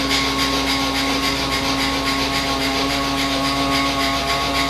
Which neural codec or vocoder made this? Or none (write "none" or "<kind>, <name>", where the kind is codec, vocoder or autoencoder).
none